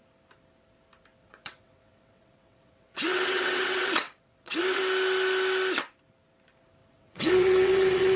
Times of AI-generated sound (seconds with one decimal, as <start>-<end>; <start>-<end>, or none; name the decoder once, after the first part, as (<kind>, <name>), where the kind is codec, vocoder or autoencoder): 1.2-4.8 (vocoder, WaveNeXt); 6.8-8.2